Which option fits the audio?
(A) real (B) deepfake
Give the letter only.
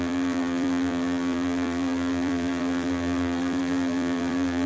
B